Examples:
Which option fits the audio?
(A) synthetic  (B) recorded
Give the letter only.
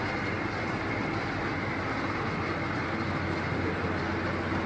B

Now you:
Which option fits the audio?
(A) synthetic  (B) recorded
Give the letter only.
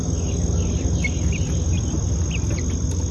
B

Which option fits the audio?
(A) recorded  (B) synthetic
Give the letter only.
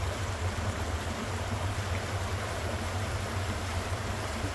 B